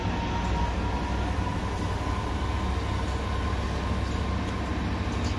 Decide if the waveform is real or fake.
real